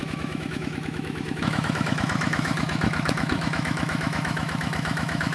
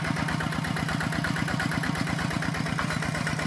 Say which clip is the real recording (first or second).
second